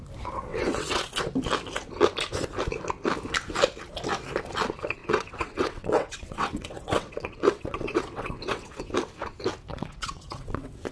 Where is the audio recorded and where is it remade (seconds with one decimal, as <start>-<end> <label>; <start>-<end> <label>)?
0.0-0.5 recorded; 0.5-1.1 remade; 1.1-5.0 recorded; 5.0-8.9 remade; 8.9-9.7 recorded; 9.7-10.9 remade